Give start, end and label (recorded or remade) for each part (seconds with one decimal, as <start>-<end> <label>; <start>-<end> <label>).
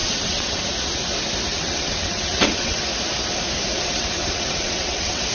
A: 0.0-0.6 remade; 0.6-1.5 recorded; 1.5-2.8 remade; 2.8-3.7 recorded; 3.7-5.3 remade